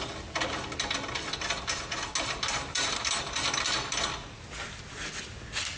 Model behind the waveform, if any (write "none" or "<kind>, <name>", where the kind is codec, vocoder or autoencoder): none